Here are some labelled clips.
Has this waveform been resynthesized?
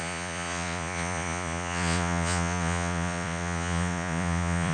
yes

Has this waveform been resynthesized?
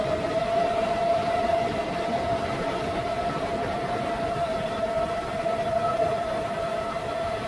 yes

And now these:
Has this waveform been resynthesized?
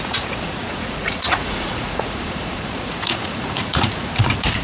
yes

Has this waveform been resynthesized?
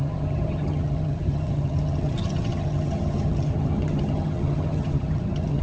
yes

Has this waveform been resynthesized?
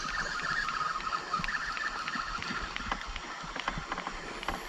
no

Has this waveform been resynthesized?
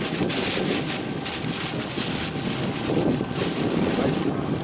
no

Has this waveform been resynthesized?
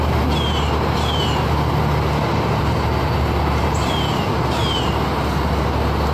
yes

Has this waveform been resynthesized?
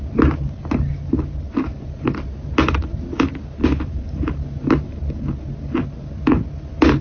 no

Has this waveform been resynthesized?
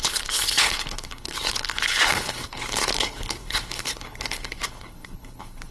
yes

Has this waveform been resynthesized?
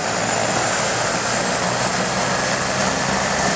no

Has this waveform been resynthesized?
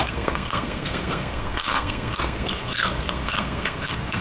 yes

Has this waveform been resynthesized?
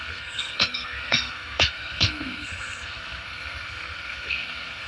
yes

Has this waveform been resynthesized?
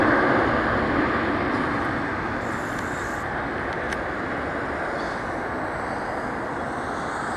no